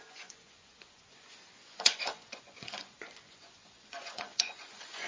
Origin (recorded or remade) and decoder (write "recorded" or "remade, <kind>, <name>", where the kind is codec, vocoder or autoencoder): remade, vocoder, Vocos